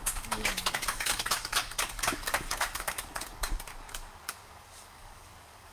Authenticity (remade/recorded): remade